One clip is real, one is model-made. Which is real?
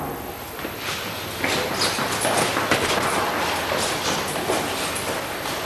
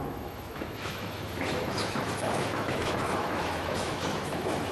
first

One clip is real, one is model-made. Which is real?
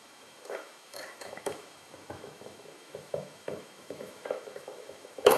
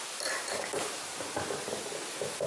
second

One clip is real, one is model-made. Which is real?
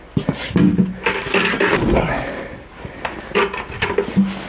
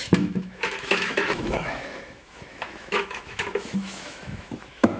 first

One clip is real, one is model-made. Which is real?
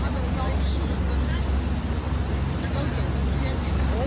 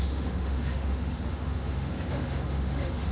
first